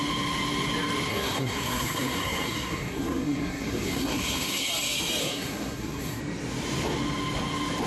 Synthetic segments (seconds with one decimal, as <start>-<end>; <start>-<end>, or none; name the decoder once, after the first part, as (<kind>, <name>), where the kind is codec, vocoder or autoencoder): 1.1-4.7 (codec, SNAC); 5.2-6.2